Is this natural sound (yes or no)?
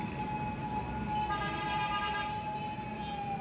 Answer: yes